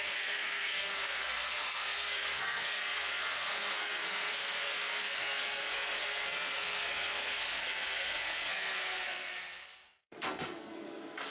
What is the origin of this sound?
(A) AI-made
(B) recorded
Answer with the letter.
A